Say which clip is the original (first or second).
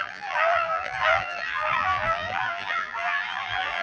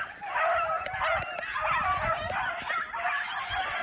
second